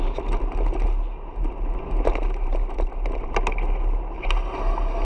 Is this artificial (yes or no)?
no